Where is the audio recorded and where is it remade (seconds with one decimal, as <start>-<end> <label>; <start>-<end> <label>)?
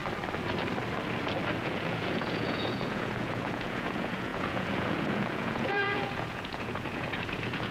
0.0-1.6 recorded; 1.6-7.7 remade